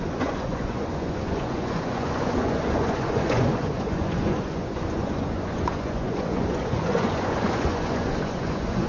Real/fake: fake